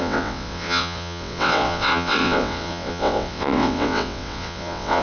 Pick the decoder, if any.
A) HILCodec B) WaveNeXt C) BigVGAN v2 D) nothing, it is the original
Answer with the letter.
B